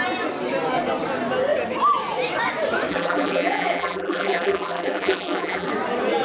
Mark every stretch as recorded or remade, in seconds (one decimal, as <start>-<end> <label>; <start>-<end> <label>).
0.0-2.9 recorded; 2.9-5.7 remade; 5.7-6.2 recorded